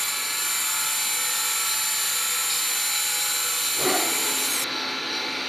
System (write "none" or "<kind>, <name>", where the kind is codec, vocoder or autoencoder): none